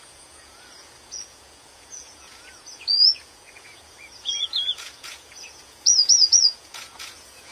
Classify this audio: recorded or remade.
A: remade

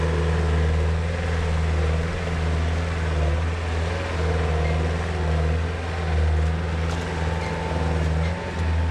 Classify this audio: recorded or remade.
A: recorded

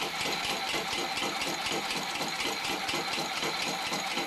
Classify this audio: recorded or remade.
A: recorded